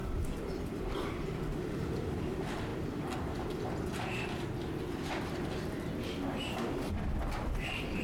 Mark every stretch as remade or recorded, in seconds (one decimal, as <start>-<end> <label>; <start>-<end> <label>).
0.0-2.3 remade; 2.3-8.0 recorded